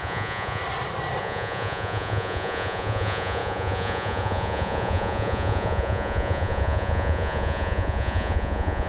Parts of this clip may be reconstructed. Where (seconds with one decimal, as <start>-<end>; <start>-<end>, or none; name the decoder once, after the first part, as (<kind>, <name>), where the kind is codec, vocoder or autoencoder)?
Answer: 0.0-0.6 (vocoder, Vocos); 1.2-8.9